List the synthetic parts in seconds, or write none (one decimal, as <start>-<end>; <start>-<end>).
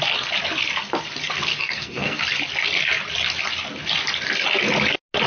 1.5-2.2